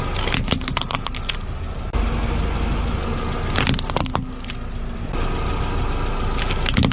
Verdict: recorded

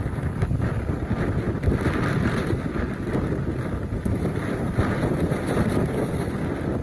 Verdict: remade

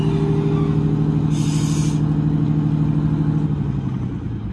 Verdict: recorded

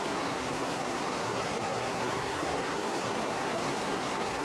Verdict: remade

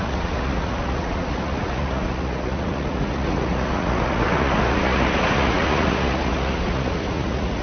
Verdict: remade